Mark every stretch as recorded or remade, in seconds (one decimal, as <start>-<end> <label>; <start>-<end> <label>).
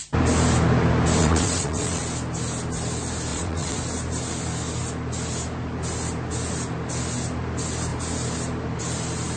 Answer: 0.0-1.2 recorded; 1.2-2.0 remade; 2.0-3.3 recorded; 3.3-3.8 remade; 3.8-9.4 recorded